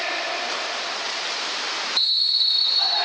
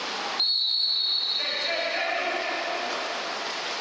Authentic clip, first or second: second